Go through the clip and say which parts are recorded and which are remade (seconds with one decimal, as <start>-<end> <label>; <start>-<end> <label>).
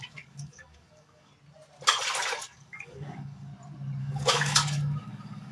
0.0-1.3 remade; 1.3-2.3 recorded; 2.3-3.5 remade; 3.5-4.0 recorded; 4.0-5.5 remade